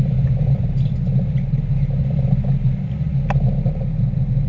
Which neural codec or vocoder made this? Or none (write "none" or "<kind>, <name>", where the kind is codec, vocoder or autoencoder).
none